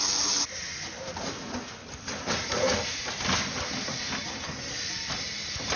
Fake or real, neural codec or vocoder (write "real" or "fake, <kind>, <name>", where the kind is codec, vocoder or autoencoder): real